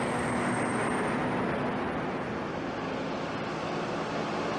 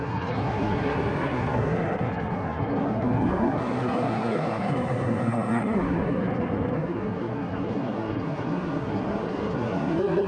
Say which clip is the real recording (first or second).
first